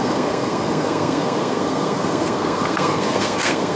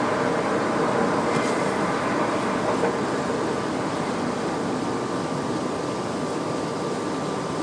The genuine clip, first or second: second